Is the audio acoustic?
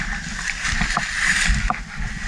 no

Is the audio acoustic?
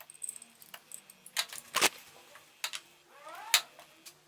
yes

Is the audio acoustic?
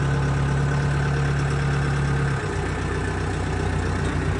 yes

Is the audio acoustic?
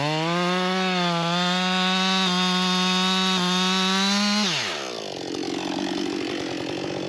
yes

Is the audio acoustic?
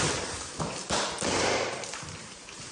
no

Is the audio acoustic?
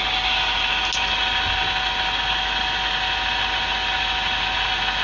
yes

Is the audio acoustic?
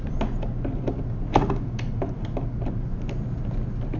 yes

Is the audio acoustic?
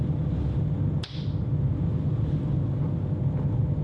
yes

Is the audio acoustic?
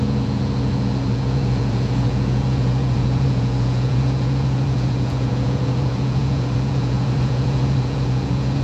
no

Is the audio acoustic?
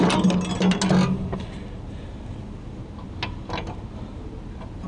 yes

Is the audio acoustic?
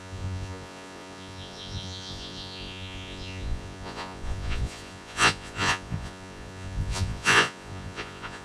no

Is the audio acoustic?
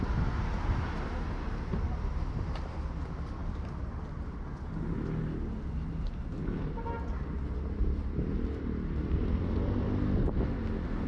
yes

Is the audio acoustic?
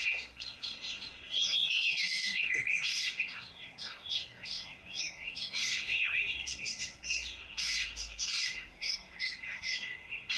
no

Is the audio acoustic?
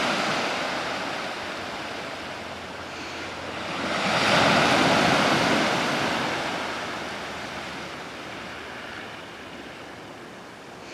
yes